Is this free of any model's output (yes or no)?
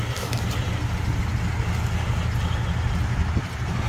yes